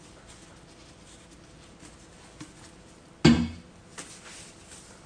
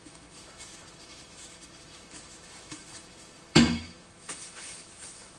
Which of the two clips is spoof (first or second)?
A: second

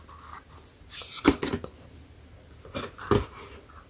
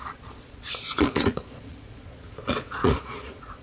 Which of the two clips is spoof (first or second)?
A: second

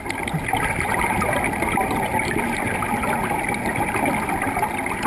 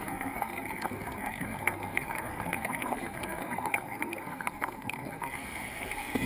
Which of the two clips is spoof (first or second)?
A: second